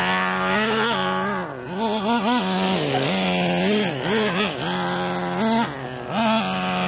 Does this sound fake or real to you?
real